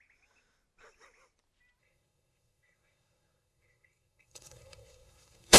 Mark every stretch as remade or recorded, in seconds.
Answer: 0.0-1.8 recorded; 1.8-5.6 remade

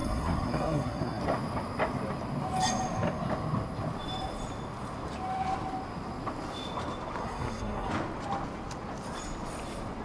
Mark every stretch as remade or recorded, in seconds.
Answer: 0.0-1.2 remade; 1.2-7.2 recorded; 7.2-7.9 remade; 7.9-10.0 recorded